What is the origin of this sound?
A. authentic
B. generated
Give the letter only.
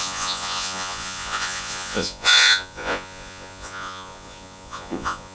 B